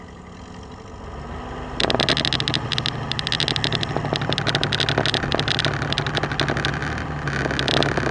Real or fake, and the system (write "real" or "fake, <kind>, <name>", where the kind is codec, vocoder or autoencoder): real